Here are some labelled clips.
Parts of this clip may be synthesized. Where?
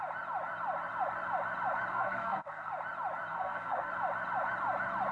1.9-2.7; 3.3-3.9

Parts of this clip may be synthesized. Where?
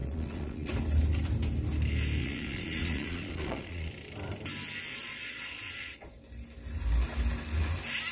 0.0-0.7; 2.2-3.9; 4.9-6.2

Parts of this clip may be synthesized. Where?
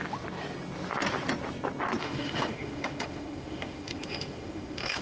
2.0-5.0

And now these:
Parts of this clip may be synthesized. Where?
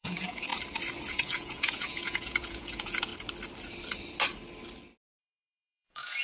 0.0-0.5; 1.1-3.1; 5.2-6.2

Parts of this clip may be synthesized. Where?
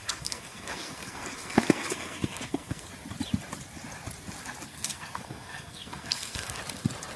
0.0-2.9; 4.7-6.6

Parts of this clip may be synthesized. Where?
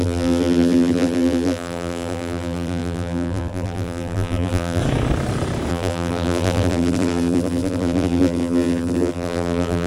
0.0-4.8; 5.7-9.9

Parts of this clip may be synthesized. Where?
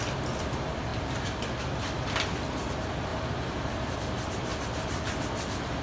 3.1-3.9; 4.5-5.3